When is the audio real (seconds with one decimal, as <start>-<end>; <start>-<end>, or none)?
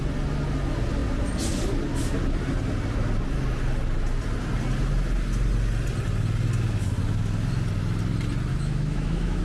0.0-8.5